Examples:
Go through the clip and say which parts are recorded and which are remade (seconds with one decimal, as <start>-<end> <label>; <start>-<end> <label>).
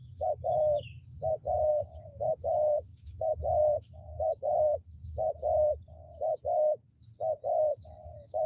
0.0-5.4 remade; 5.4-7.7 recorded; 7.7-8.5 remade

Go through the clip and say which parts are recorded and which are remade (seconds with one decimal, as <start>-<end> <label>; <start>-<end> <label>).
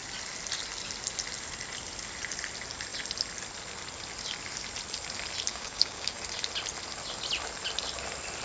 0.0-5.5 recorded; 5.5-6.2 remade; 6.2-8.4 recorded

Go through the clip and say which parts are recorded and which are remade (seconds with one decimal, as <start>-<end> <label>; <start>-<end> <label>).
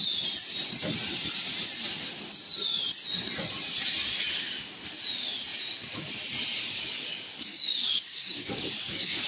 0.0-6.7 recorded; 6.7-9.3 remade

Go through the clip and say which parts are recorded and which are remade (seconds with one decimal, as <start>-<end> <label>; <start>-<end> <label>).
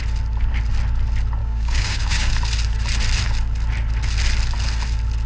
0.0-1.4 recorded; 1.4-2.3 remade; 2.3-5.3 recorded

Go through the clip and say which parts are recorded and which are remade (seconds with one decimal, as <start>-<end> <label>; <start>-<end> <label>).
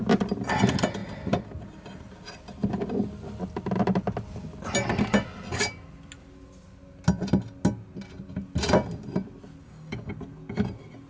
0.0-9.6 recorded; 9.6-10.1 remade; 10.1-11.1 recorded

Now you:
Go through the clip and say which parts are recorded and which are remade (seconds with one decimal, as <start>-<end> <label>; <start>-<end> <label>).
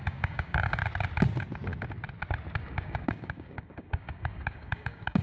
0.0-0.8 remade; 0.8-2.6 recorded; 2.6-5.2 remade